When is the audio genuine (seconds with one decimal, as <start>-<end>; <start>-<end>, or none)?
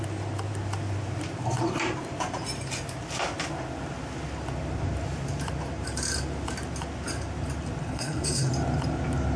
0.0-7.8; 8.5-9.4